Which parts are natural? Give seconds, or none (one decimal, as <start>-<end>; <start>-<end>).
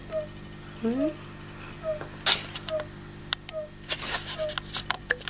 0.0-5.3